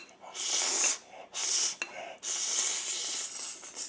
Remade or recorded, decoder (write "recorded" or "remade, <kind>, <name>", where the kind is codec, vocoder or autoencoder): recorded